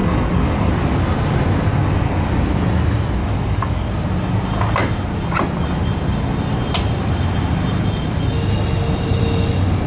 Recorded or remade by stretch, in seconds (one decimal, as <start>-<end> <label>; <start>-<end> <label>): 0.0-0.7 remade; 0.7-1.8 recorded; 1.8-2.3 remade; 2.3-3.2 recorded; 3.2-3.9 remade; 3.9-9.9 recorded